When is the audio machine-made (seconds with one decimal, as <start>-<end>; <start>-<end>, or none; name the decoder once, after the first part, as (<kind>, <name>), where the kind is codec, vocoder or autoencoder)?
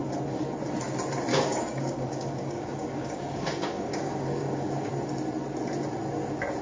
1.3-4.9 (codec, DAC)